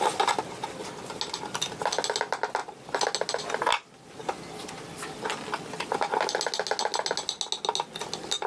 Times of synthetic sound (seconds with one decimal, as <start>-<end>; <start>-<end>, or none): none